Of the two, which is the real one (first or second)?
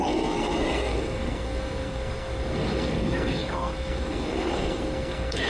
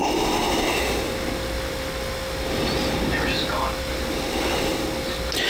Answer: second